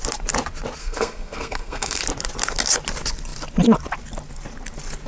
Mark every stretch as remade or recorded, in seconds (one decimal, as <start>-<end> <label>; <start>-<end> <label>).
0.0-0.8 recorded; 0.8-2.0 remade; 2.0-5.1 recorded